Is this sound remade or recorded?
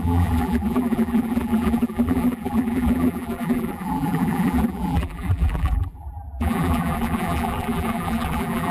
remade